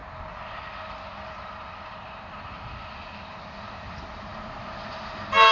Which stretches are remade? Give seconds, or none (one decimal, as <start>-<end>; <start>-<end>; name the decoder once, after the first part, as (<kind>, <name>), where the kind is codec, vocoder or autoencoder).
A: none